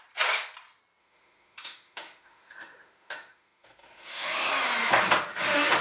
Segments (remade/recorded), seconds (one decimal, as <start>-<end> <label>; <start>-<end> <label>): 0.0-1.0 recorded; 1.0-4.5 remade; 4.5-5.3 recorded; 5.3-5.8 remade